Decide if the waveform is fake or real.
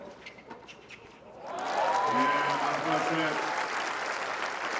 real